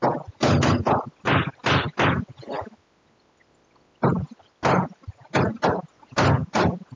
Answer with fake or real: real